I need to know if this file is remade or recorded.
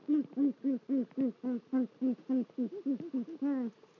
recorded